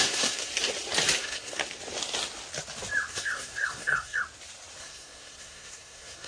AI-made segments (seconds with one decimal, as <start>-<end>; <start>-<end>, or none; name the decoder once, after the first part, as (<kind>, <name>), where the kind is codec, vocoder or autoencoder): 0.0-0.5 (codec, SNAC); 1.2-1.6; 3.1-4.2; 4.8-6.3